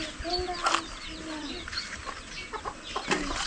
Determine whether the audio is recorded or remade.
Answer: recorded